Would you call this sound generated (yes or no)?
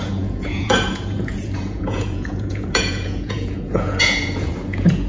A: yes